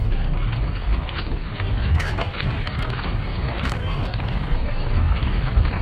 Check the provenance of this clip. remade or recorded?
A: remade